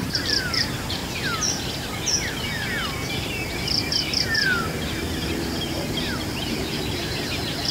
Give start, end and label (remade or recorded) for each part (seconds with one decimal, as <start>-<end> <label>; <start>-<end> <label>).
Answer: 0.0-1.0 remade; 1.0-3.6 recorded; 3.6-7.7 remade